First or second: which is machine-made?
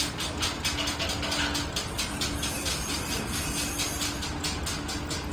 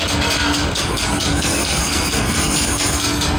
second